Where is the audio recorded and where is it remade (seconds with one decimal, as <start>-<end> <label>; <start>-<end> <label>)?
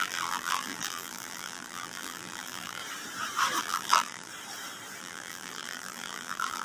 0.0-2.8 remade; 2.8-3.6 recorded; 3.6-4.3 remade; 4.3-5.0 recorded; 5.0-6.6 remade